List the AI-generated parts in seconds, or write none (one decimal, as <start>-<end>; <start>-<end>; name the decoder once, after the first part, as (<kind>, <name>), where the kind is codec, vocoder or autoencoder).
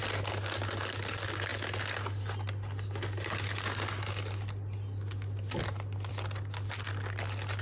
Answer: none